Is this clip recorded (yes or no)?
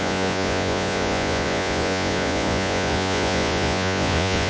no